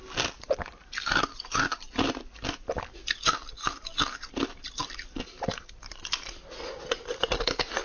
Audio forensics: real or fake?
real